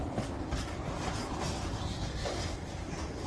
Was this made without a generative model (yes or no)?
yes